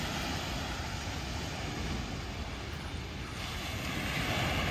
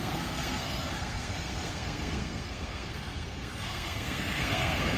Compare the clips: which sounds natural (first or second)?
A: first